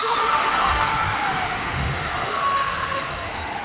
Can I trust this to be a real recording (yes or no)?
no